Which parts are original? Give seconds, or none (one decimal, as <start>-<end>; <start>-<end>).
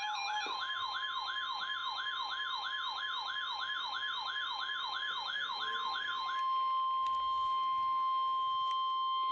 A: 0.0-9.3